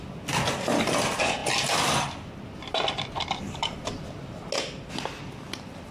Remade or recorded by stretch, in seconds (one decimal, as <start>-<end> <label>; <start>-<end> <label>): 0.0-5.9 recorded